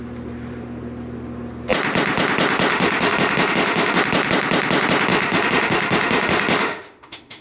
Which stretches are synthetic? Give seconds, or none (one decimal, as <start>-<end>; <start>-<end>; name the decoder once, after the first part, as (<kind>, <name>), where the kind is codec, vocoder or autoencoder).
2.7-4.0 (autoencoder, DAC-VAE); 5.1-7.4